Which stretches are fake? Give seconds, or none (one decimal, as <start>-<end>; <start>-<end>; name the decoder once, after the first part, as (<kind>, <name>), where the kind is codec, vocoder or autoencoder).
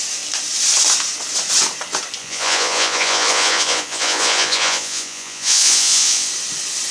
2.2-6.3 (vocoder, Vocos)